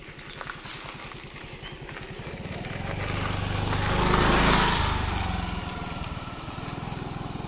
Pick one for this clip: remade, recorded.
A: recorded